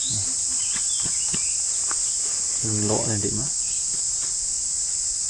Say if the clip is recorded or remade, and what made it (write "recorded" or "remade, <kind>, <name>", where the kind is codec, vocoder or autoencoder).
recorded